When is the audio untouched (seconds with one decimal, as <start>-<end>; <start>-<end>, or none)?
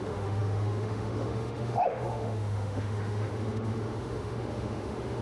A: none